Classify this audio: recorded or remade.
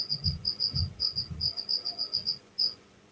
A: remade